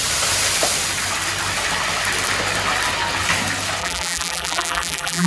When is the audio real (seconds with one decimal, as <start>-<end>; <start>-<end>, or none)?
0.0-3.8